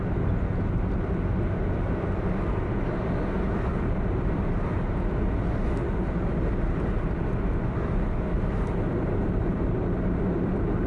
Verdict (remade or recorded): recorded